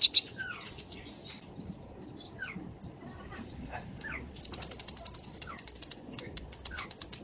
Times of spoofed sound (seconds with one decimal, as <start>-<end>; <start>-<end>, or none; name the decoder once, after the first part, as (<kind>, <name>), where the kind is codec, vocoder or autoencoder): 0.0-1.2 (vocoder, Vocos); 5.5-7.2